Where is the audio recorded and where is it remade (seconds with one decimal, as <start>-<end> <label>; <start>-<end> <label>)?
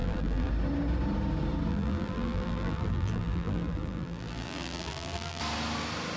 0.0-0.5 remade; 0.5-1.7 recorded; 1.7-5.4 remade; 5.4-6.2 recorded